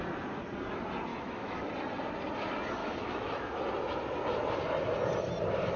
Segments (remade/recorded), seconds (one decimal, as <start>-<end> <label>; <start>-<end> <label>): 0.0-1.1 recorded; 1.1-1.7 remade; 1.7-2.8 recorded; 2.8-3.6 remade; 3.6-5.8 recorded